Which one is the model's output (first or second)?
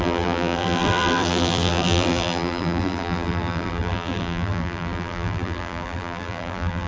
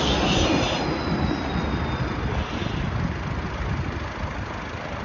first